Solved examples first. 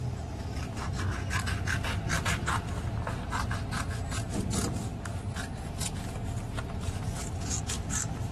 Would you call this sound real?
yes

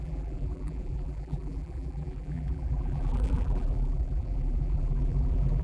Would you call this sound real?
no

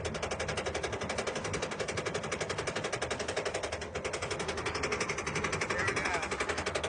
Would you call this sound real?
yes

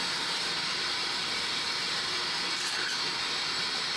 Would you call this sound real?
no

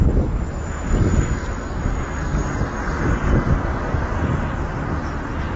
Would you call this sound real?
yes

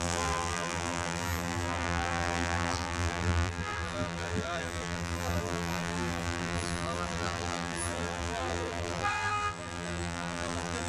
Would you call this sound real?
no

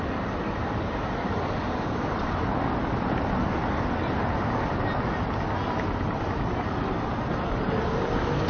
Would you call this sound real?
yes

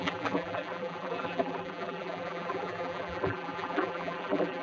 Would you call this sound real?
no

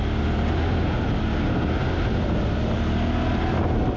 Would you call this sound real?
yes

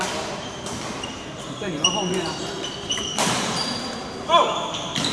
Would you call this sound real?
no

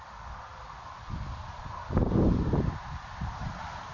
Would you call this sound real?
no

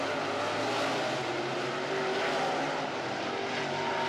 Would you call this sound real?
yes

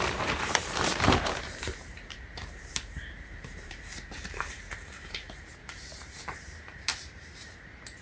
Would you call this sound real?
no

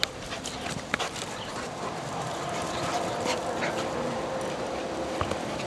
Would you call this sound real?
yes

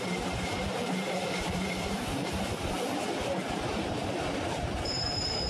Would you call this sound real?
no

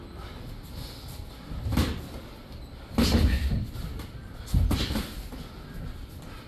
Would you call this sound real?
yes